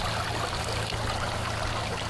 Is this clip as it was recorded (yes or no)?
yes